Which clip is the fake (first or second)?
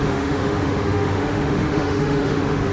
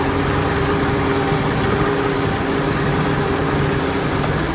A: first